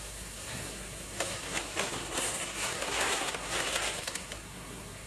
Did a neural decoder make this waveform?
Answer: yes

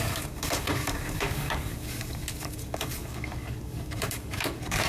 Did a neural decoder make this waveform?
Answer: yes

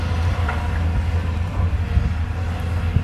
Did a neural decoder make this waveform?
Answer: no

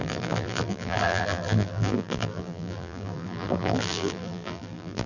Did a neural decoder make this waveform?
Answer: yes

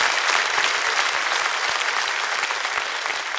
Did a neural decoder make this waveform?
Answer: no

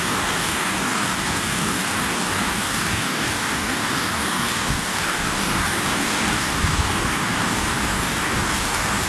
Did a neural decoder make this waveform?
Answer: yes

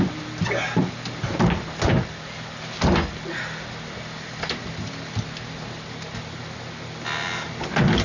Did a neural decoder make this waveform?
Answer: no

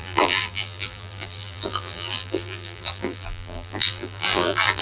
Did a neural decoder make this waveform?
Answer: yes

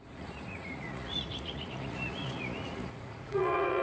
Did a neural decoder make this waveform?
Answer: yes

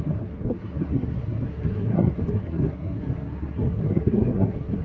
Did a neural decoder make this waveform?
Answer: yes